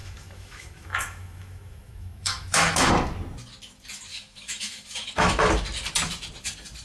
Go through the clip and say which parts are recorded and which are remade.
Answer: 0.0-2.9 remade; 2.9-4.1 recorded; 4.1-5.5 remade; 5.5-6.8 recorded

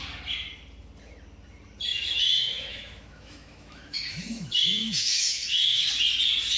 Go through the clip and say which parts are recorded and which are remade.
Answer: 0.0-1.9 recorded; 1.9-5.9 remade; 5.9-6.6 recorded

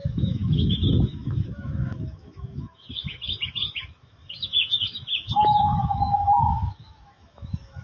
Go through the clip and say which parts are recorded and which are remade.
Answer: 0.0-7.8 remade